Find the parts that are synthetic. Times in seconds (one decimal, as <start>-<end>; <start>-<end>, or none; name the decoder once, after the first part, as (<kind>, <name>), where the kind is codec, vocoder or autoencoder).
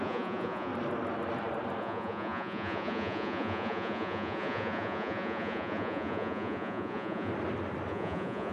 0.0-0.7 (vocoder, Vocos); 1.8-7.3; 7.9-8.5